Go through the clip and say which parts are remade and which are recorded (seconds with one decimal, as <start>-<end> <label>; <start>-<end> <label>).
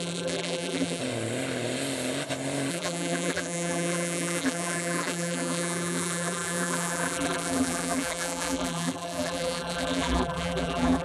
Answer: 0.0-1.0 remade; 1.0-2.7 recorded; 2.7-11.0 remade